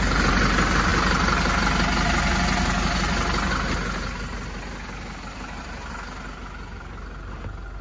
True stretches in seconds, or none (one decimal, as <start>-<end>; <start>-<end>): 0.0-7.8